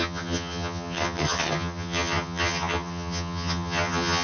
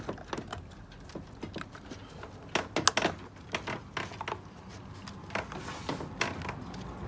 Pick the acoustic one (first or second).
second